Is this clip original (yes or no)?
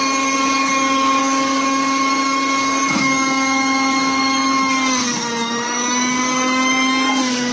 no